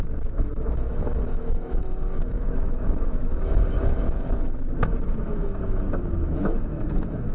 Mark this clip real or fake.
fake